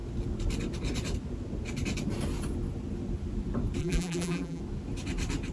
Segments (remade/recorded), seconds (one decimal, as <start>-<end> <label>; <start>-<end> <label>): 0.0-3.8 recorded; 3.8-4.6 remade; 4.6-5.5 recorded